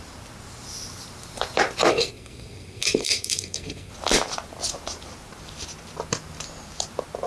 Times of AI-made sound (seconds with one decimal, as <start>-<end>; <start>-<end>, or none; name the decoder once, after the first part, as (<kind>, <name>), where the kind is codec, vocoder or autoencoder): 1.9-3.9 (codec, SNAC)